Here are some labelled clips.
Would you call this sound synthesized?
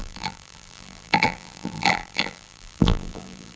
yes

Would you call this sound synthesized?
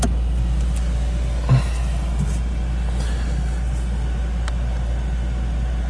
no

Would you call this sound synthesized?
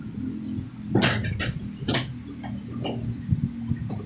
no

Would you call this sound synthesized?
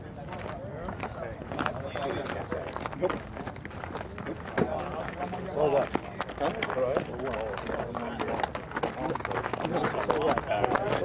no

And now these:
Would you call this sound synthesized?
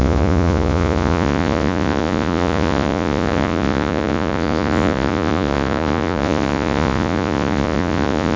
yes